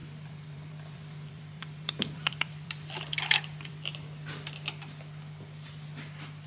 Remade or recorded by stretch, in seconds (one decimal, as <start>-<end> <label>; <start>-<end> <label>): 0.0-3.9 remade; 3.9-6.5 recorded